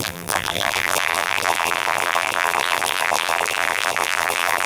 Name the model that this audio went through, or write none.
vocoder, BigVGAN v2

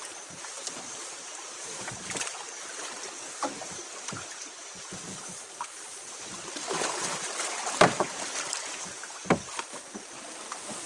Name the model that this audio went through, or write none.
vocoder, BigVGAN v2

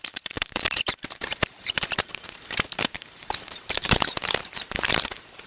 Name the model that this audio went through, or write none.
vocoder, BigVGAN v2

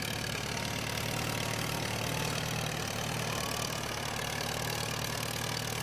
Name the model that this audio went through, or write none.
none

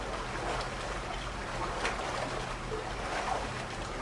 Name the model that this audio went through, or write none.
none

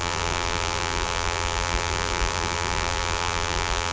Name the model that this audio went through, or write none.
vocoder, BigVGAN v2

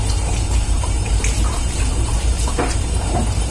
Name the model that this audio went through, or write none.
vocoder, BigVGAN v2